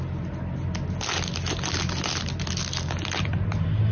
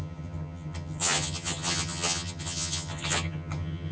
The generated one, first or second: second